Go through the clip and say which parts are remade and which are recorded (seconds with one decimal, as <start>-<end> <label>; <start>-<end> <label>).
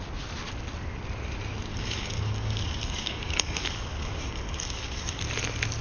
0.0-1.7 recorded; 1.7-5.2 remade; 5.2-5.8 recorded